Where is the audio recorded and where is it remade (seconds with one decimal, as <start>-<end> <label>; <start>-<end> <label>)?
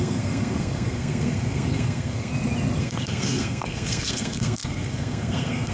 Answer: 0.0-2.3 remade; 2.3-2.8 recorded; 2.8-5.7 remade